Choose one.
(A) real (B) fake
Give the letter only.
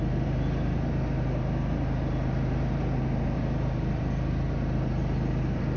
B